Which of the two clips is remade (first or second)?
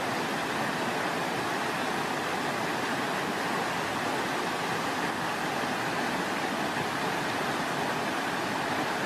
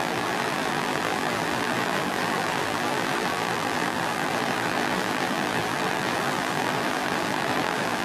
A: second